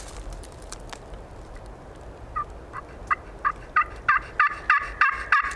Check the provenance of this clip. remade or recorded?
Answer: recorded